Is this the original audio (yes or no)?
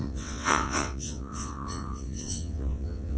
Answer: no